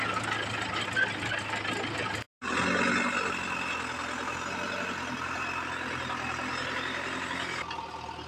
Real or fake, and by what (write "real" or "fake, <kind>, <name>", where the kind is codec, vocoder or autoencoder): real